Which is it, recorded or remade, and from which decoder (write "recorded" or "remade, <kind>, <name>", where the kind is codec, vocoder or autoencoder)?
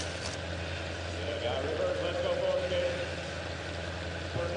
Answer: recorded